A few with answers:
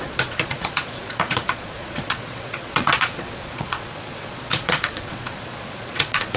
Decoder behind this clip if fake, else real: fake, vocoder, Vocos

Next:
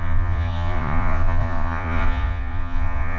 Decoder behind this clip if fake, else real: fake, vocoder, Vocos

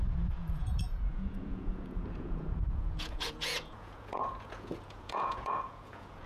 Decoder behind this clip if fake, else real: fake, vocoder, Vocos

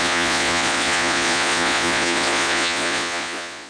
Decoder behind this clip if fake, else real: fake, vocoder, Vocos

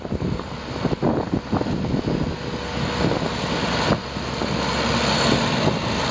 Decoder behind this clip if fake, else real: real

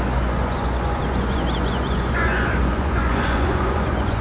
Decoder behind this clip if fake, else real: fake, vocoder, Vocos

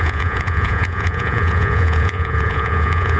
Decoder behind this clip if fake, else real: fake, vocoder, Vocos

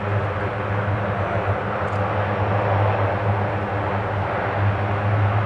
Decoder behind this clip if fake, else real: real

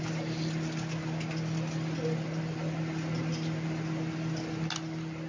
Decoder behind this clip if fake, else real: real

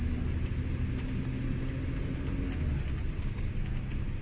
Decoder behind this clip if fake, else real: real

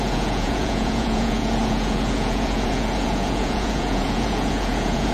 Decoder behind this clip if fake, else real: fake, vocoder, Vocos